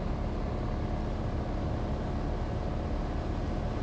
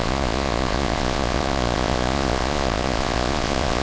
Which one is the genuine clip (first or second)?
first